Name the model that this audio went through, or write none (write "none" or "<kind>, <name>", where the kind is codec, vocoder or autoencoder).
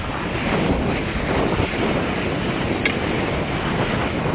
none